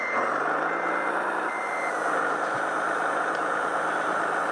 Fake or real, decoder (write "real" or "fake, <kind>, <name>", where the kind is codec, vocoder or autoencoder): real